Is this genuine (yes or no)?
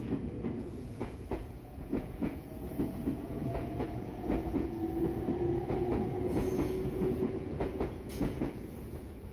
no